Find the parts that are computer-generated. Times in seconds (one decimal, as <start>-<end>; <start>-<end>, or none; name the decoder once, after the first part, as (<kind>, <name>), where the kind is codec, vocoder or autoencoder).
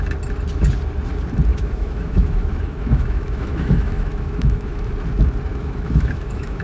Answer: 1.5-4.9 (autoencoder, DAC-VAE); 5.5-6.6